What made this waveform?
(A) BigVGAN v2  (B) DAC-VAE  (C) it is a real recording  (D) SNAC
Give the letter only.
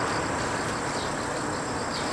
C